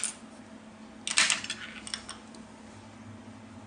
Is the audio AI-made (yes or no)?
no